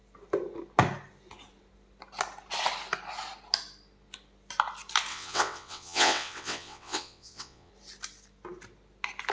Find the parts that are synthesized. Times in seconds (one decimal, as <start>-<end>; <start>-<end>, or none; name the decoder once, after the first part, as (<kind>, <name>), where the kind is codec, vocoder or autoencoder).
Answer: 5.1-7.7 (vocoder, WaveNeXt)